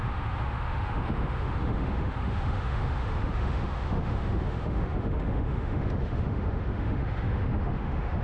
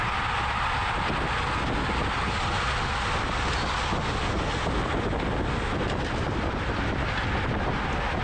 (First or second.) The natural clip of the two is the second